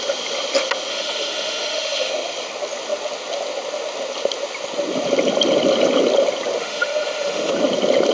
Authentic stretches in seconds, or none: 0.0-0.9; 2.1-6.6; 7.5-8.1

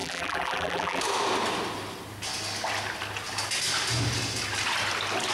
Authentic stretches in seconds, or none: 1.0-5.3

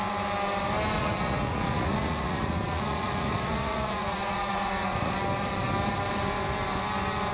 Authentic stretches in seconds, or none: 0.0-1.0; 5.1-7.3